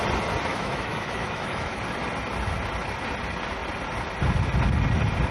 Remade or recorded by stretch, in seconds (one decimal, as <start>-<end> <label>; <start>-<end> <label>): 0.0-0.5 recorded; 0.5-1.8 remade; 1.8-5.3 recorded